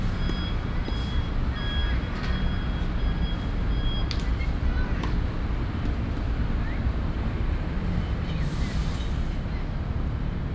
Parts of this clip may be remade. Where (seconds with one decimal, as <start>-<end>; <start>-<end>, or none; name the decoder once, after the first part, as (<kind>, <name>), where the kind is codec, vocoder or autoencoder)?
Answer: 0.0-1.8 (vocoder, BigVGAN v2); 4.4-10.5